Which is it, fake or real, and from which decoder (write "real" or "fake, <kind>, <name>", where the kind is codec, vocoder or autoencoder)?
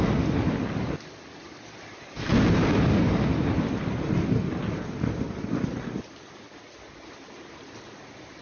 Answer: real